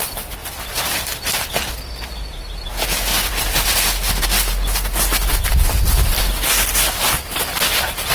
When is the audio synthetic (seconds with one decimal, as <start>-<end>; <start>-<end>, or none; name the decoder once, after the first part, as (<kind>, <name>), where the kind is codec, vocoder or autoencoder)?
0.4-1.1 (vocoder, BigVGAN v2); 3.1-4.5